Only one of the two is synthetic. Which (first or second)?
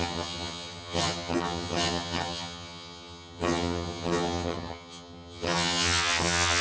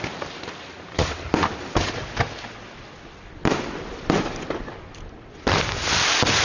first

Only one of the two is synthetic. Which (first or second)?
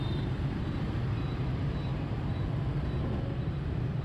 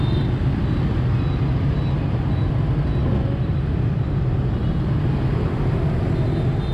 first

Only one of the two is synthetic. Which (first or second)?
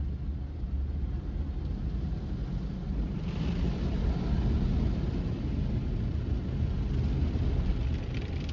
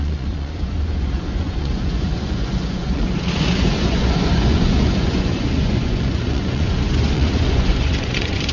second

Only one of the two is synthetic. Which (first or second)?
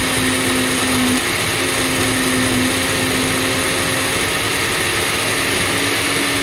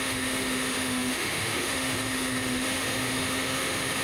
second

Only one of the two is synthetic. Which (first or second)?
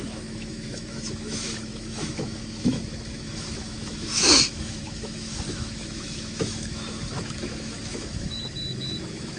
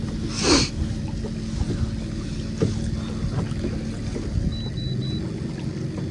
first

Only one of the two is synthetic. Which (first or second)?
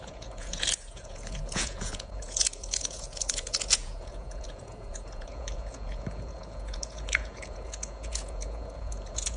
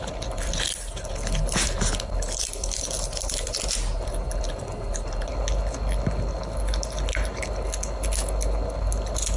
first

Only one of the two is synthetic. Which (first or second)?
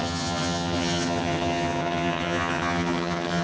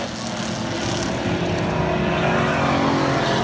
first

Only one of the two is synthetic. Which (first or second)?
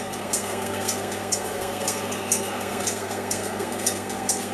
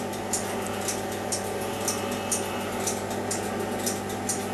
first